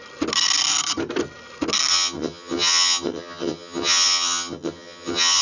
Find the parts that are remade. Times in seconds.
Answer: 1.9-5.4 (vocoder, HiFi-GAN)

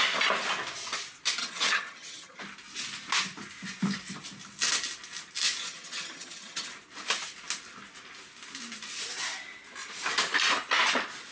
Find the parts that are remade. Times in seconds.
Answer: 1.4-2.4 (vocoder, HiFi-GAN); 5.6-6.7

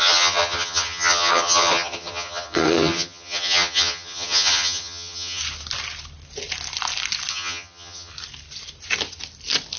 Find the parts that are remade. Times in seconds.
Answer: 0.0-5.4 (vocoder, HiFi-GAN); 7.3-8.1

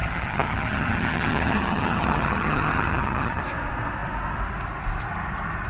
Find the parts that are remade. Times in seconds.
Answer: 0.0-3.4 (vocoder, HiFi-GAN)

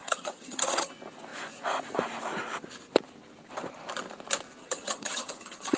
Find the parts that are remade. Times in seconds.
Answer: 0.0-0.9 (vocoder, HiFi-GAN); 4.6-5.8